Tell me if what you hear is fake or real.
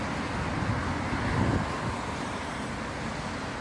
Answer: real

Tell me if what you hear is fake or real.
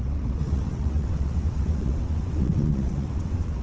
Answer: fake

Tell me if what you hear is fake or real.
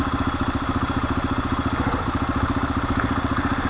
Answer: real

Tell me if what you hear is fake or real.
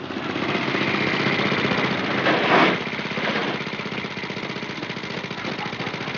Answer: real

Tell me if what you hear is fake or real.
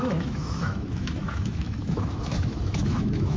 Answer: fake